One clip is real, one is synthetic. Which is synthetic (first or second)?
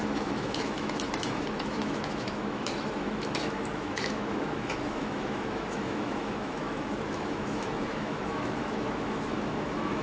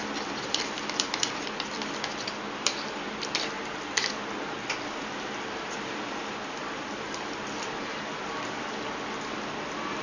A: first